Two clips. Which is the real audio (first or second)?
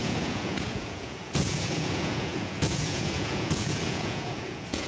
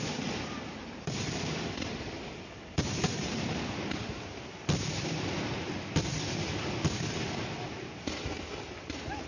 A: second